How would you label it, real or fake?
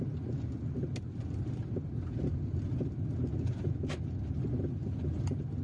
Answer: real